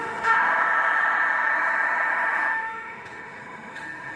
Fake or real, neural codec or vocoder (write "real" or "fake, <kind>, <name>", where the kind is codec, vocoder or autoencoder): fake, autoencoder, DAC-VAE